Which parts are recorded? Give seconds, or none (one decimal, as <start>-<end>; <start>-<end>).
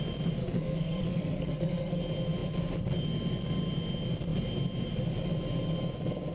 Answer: 0.0-0.4; 2.0-6.3